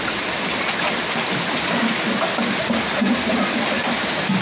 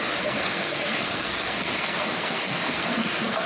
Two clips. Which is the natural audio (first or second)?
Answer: first